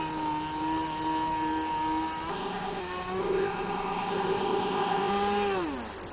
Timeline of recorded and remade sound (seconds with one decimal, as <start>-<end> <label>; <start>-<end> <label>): 0.0-2.3 recorded; 2.3-2.8 remade; 2.8-3.2 recorded; 3.2-5.1 remade; 5.1-6.1 recorded